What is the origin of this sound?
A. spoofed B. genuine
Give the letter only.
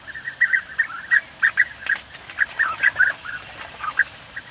B